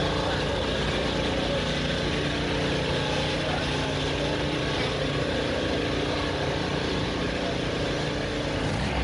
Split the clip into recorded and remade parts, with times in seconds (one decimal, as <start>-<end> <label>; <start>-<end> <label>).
0.0-9.0 recorded